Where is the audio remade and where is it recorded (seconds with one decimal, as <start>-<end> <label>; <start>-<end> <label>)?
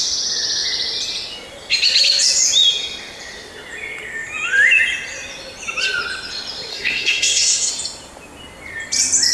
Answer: 0.0-6.7 recorded; 6.7-7.7 remade; 7.7-9.3 recorded